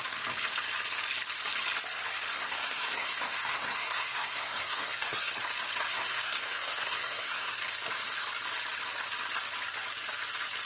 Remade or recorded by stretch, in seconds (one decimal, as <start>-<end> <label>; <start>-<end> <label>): 0.0-2.3 recorded; 2.3-5.3 remade; 5.3-5.9 recorded; 5.9-7.6 remade; 7.6-10.7 recorded

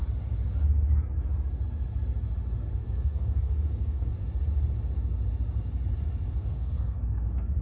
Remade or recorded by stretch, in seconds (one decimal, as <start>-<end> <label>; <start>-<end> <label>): 0.0-2.8 recorded; 2.8-4.1 remade; 4.1-6.4 recorded; 6.4-7.6 remade

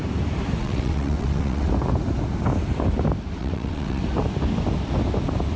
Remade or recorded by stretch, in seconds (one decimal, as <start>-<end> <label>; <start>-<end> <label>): 0.0-0.6 recorded; 0.6-1.7 remade; 1.7-3.4 recorded; 3.4-4.0 remade; 4.0-5.6 recorded

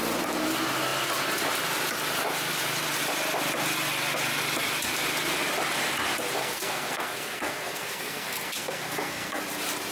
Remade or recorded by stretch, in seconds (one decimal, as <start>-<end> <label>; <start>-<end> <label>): 0.0-6.4 recorded; 6.4-9.4 remade; 9.4-9.9 recorded

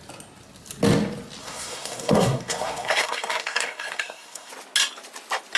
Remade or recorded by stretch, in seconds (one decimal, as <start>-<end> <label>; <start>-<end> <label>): 0.0-1.4 recorded; 1.4-4.5 remade; 4.5-5.6 recorded

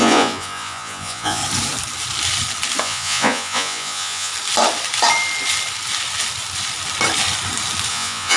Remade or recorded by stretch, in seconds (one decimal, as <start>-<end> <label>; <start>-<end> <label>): 0.0-1.4 remade; 1.4-2.8 recorded; 2.8-4.3 remade; 4.3-7.9 recorded; 7.9-8.4 remade